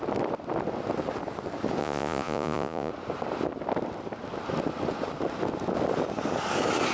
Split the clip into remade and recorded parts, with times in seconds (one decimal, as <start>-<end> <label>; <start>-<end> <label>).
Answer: 0.0-1.8 recorded; 1.8-2.9 remade; 2.9-6.9 recorded